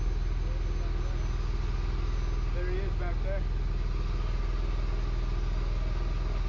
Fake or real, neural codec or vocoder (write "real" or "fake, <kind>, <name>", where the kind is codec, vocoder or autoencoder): real